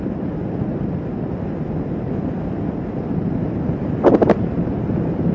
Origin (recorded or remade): recorded